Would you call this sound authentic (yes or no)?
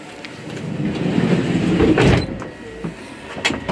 yes